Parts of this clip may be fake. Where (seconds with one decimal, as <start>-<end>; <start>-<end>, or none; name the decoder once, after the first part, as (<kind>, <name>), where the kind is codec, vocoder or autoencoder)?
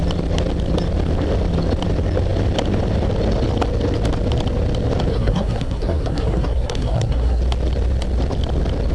5.1-7.4 (codec, SNAC)